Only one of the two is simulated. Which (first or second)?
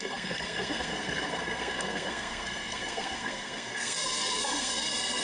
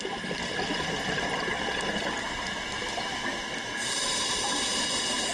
first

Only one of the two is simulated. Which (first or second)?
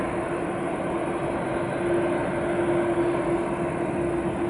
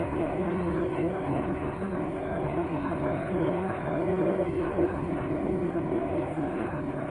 second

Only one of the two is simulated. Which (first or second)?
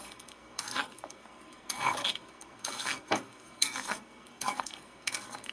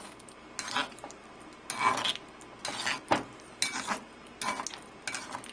first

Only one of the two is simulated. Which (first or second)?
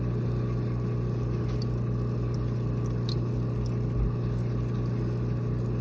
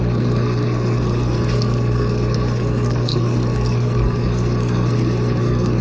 second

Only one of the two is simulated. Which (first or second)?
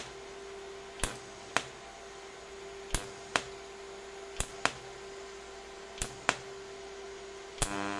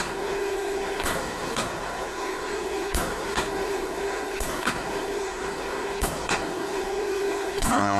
second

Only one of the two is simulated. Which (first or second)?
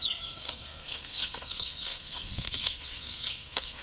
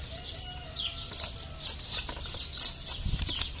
first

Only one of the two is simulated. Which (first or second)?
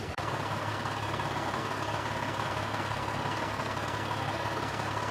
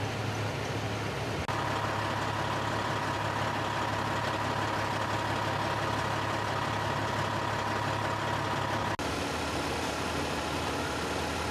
first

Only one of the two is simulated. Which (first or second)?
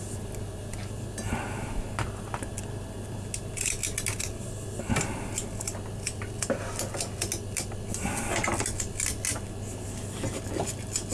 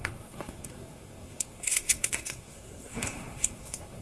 second